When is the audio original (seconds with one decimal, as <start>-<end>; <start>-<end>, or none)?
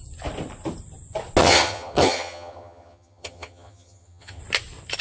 0.0-1.4; 4.4-5.0